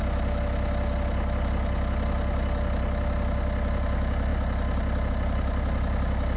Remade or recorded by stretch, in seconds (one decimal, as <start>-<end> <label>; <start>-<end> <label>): 0.0-6.4 recorded